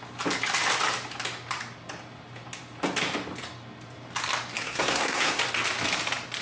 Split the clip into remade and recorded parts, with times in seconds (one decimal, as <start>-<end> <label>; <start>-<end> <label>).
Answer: 0.0-4.6 recorded; 4.6-5.4 remade; 5.4-6.4 recorded